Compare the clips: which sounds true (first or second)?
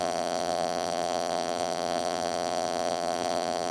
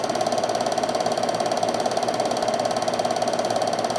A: second